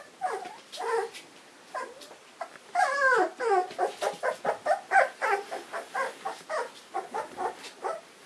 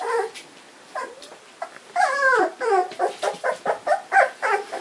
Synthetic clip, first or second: second